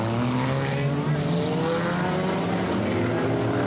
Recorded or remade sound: recorded